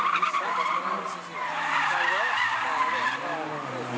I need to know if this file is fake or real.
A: real